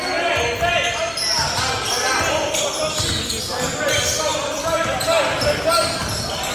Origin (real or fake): real